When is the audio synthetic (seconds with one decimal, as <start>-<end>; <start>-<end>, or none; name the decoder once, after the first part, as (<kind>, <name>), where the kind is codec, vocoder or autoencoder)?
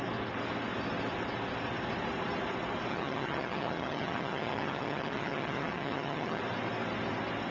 2.9-6.4 (vocoder, HiFi-GAN)